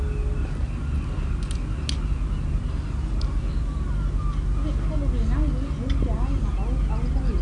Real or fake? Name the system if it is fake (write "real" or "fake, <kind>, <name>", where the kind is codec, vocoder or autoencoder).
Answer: real